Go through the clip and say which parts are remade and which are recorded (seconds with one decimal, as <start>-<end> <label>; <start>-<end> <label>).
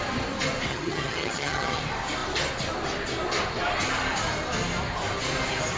0.0-0.7 recorded; 0.7-1.8 remade; 1.8-5.8 recorded